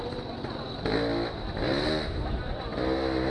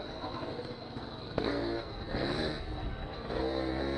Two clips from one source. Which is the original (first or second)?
first